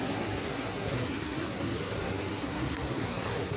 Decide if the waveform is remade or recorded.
remade